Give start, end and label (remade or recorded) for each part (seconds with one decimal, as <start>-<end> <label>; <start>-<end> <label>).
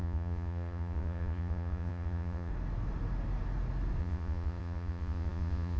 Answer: 0.0-2.5 remade; 2.5-4.0 recorded; 4.0-5.8 remade